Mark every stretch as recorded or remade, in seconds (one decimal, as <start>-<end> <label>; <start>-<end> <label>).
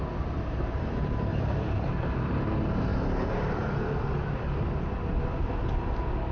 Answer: 0.0-1.3 recorded; 1.3-2.3 remade; 2.3-6.3 recorded